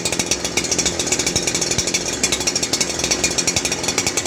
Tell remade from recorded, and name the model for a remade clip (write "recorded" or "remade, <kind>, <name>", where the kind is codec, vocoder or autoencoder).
recorded